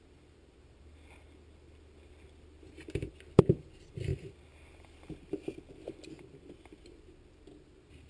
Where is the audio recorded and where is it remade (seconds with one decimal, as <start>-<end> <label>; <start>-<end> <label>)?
0.0-8.1 recorded